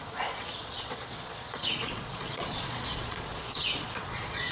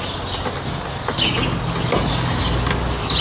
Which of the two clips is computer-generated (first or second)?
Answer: first